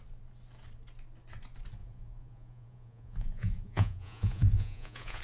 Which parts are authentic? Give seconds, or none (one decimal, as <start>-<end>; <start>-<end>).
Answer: 0.0-1.8